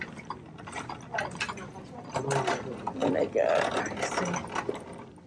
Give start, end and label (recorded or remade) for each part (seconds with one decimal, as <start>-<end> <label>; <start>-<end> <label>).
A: 0.0-5.3 recorded